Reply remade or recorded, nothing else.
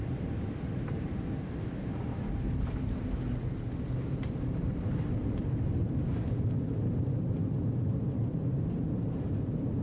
remade